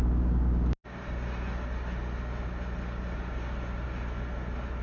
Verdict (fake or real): real